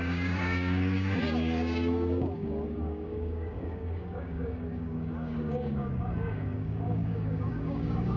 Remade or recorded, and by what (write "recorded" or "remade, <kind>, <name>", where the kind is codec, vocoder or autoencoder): remade, codec, DAC